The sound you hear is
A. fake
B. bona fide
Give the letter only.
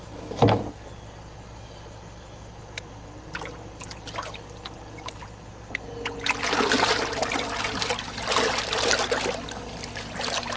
B